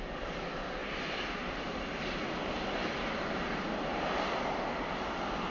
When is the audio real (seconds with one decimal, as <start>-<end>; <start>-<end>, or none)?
0.0-5.5